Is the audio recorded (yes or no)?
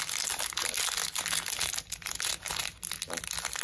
yes